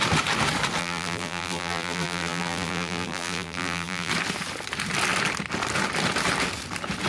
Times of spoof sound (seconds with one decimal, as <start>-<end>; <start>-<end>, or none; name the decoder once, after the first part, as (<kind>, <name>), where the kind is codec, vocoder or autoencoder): 0.8-4.1 (vocoder, BigVGAN v2)